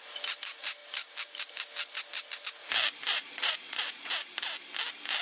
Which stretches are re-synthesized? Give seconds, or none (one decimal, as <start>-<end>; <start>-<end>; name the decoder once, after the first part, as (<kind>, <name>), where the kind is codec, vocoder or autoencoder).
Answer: 3.1-4.1 (vocoder, Vocos)